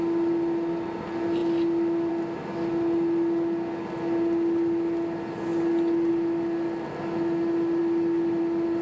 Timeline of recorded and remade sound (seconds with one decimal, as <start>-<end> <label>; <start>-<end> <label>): 0.0-8.8 recorded